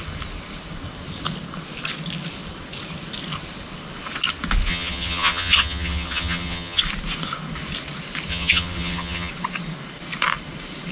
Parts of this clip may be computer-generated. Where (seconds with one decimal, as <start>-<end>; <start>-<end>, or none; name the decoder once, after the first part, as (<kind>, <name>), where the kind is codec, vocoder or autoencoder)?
4.7-6.8 (vocoder, HiFi-GAN); 8.3-9.3